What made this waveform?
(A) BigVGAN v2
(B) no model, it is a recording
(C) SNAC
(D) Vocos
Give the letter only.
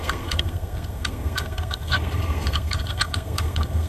C